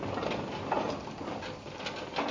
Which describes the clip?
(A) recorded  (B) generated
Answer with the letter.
A